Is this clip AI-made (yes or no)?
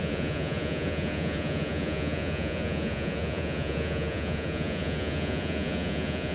yes